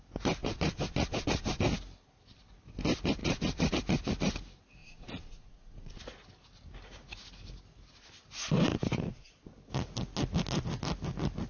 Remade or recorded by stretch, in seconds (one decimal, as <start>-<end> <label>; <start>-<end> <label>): 0.0-0.4 recorded; 0.4-1.6 remade; 1.6-3.2 recorded; 3.2-3.7 remade; 3.7-4.8 recorded; 4.8-6.0 remade; 6.0-8.7 recorded; 8.7-9.3 remade; 9.3-11.5 recorded